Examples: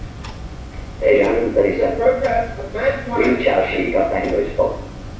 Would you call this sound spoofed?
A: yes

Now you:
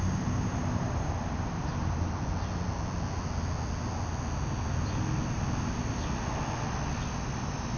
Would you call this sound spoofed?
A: no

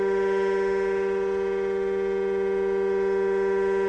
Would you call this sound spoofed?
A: no